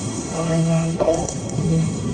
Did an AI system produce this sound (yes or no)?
yes